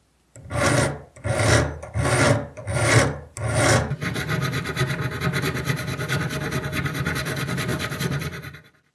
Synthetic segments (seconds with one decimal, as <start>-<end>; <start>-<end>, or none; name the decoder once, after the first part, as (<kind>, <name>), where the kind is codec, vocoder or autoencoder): none